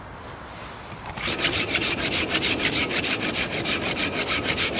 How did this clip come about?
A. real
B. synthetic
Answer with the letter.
B